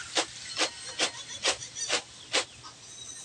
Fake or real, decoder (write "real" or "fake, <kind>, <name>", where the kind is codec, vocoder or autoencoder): real